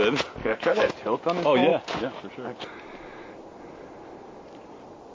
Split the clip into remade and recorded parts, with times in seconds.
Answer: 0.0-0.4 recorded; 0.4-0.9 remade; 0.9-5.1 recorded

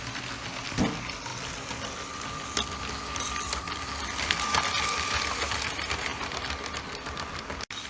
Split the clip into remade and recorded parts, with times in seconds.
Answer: 0.0-7.9 recorded

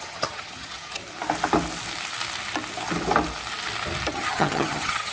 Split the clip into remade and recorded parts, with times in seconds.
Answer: 0.0-1.0 remade; 1.0-4.1 recorded; 4.1-5.1 remade

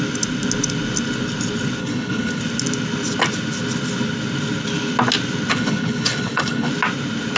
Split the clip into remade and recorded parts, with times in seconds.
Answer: 0.0-1.8 recorded; 1.8-2.4 remade; 2.4-5.5 recorded; 5.5-6.7 remade; 6.7-7.4 recorded

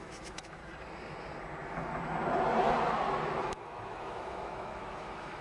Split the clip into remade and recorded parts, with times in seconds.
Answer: 0.0-0.6 remade; 0.6-3.4 recorded; 3.4-5.4 remade

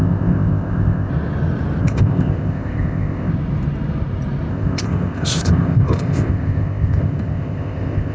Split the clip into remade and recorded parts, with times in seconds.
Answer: 0.0-1.1 remade; 1.1-1.8 recorded; 1.8-3.3 remade; 3.3-4.5 recorded; 4.5-8.1 remade

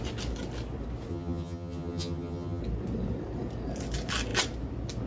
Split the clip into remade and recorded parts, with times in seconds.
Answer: 0.0-1.1 recorded; 1.1-2.6 remade; 2.6-5.1 recorded